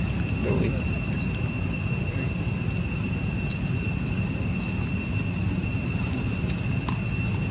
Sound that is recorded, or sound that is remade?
recorded